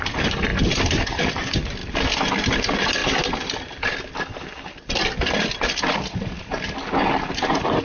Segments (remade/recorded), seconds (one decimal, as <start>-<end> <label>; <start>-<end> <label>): 0.0-7.8 recorded